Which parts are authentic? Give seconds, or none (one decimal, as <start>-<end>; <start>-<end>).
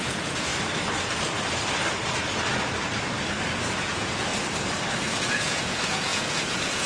0.5-3.8; 4.3-5.1